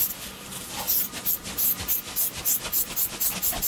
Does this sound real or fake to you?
real